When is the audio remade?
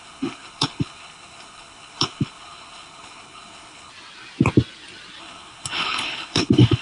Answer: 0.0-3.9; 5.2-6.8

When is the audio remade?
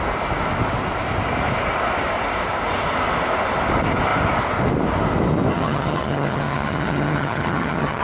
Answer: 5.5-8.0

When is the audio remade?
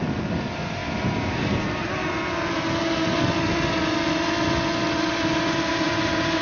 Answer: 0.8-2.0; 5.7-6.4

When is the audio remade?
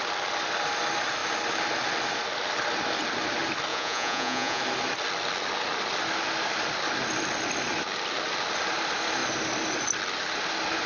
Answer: 3.7-4.6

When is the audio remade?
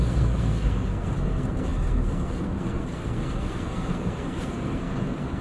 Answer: 0.0-5.4